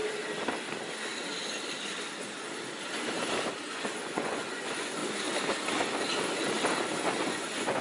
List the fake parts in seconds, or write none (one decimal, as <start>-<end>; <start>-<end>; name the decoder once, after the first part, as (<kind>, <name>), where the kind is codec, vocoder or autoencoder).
3.7-5.0 (vocoder, Vocos); 7.3-7.8